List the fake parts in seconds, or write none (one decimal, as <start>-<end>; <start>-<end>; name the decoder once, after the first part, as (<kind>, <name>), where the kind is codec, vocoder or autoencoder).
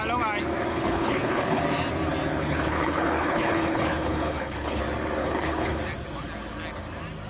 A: 0.7-1.6 (codec, HILCodec); 2.4-4.8; 5.2-5.8